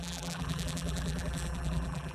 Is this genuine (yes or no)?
no